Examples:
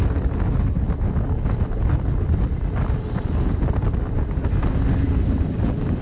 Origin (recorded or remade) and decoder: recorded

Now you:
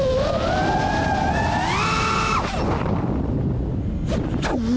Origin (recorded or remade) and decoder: recorded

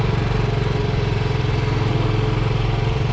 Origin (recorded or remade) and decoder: recorded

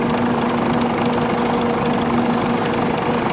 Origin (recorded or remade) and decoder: recorded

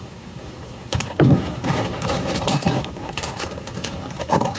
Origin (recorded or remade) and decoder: remade, codec, SNAC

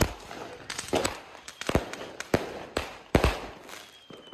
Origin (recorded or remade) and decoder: recorded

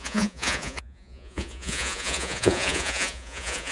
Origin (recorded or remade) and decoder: remade, vocoder, Vocos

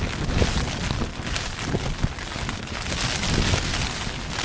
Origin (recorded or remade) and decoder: recorded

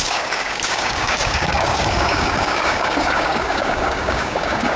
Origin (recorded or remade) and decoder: remade, codec, DAC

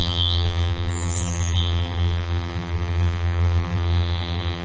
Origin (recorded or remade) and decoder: remade, vocoder, BigVGAN v2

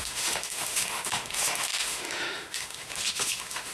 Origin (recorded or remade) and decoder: remade, autoencoder, DAC-VAE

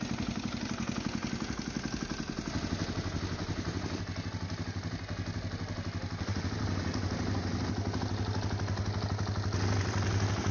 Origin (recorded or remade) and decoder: recorded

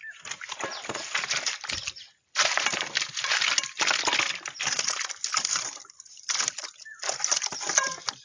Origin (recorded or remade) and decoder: recorded